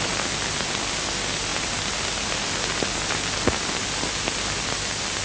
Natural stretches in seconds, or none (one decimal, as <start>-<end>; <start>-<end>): 0.0-5.2